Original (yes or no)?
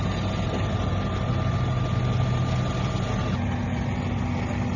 yes